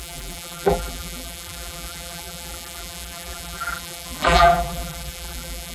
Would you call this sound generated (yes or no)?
yes